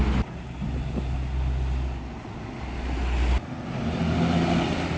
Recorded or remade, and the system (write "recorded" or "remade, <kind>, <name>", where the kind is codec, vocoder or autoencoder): recorded